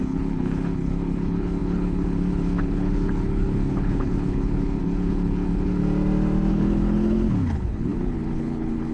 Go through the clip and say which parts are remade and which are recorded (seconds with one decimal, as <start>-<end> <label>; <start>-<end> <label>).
0.0-5.8 remade; 5.8-6.5 recorded; 6.5-8.9 remade